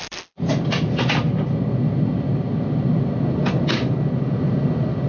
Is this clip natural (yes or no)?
yes